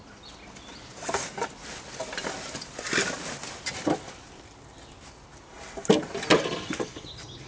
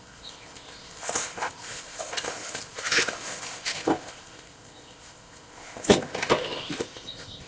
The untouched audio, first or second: first